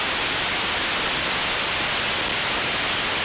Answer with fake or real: real